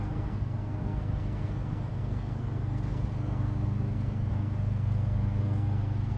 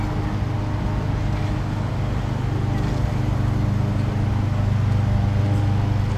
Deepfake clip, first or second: first